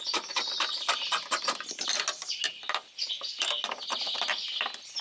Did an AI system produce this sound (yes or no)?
no